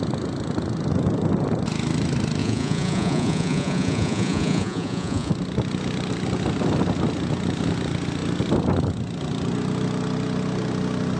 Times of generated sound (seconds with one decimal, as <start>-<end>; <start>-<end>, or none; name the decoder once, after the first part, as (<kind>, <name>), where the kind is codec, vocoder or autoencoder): 2.4-5.3 (vocoder, Vocos)